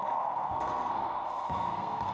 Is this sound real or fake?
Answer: fake